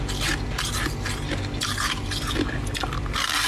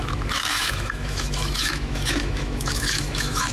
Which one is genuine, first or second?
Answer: first